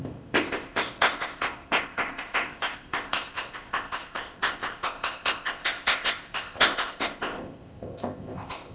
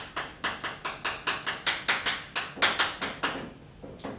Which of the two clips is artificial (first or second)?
first